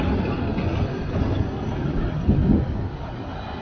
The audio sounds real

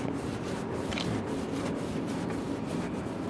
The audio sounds real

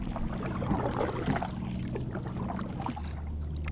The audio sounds real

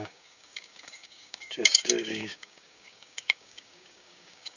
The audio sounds fake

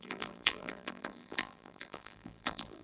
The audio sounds fake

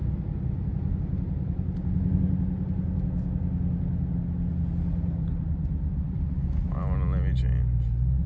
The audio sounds real